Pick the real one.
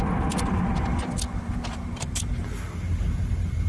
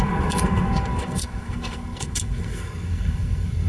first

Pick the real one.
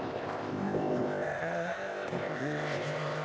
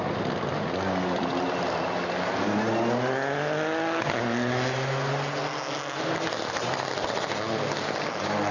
second